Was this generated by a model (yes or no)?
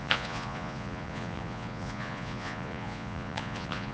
yes